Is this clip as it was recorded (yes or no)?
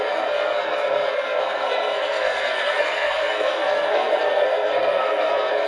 no